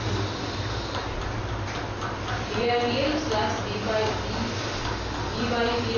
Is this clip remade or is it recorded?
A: recorded